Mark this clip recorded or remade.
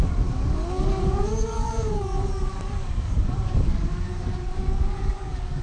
remade